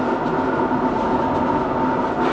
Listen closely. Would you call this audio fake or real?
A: real